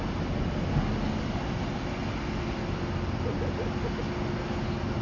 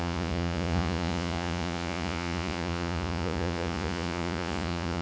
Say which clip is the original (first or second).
first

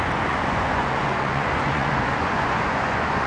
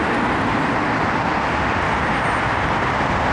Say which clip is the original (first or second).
second